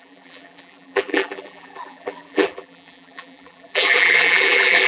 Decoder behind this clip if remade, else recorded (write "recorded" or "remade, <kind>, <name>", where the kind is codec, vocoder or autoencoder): remade, vocoder, BigVGAN v2